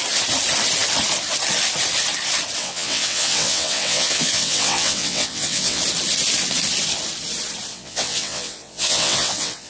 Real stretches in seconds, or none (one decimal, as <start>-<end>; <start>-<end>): 0.0-2.6; 5.8-7.7